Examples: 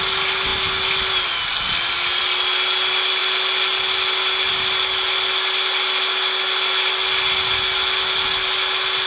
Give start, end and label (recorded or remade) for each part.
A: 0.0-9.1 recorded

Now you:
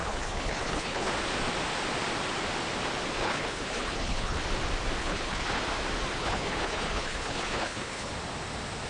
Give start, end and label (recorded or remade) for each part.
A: 0.0-1.1 remade; 1.1-3.2 recorded; 3.2-4.4 remade; 4.4-5.0 recorded; 5.0-5.6 remade; 5.6-6.2 recorded; 6.2-8.1 remade; 8.1-8.9 recorded